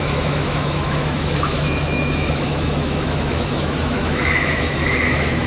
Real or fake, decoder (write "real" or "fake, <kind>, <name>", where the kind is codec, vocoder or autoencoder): fake, autoencoder, DAC-VAE